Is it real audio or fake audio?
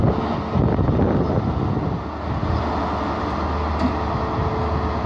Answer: real